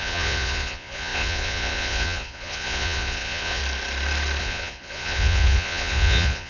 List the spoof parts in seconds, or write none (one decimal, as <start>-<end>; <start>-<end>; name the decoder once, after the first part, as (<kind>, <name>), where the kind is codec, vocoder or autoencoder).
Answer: 0.0-3.6 (vocoder, Vocos); 4.4-6.5